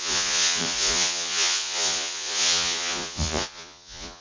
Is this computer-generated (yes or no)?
yes